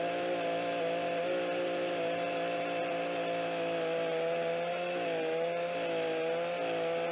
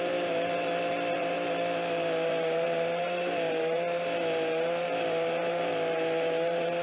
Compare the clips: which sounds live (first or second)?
first